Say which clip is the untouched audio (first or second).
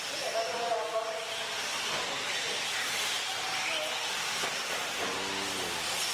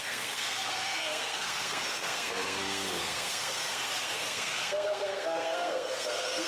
first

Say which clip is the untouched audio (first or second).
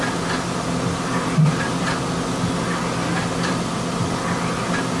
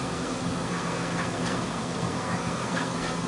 first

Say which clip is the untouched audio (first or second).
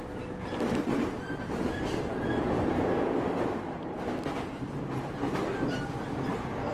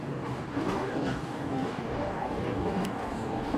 first